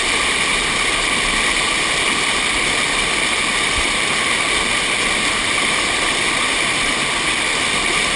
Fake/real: real